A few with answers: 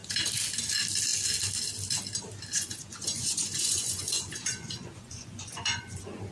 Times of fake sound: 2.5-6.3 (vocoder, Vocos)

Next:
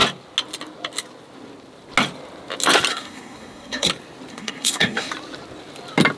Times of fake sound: 2.9-3.9 (codec, SNAC); 4.3-5.1